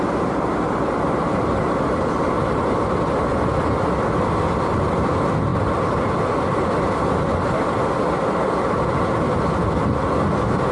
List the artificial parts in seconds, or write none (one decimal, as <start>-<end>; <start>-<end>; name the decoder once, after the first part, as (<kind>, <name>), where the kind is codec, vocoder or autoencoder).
none